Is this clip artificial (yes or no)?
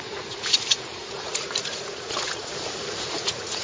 yes